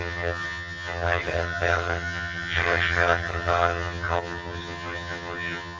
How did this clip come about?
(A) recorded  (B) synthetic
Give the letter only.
B